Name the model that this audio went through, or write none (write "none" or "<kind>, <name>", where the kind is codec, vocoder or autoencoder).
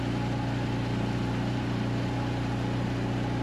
none